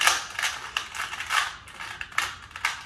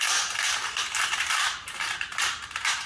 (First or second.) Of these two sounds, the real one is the first